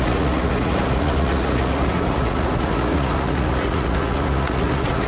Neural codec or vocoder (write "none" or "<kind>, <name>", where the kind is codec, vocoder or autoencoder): vocoder, Vocos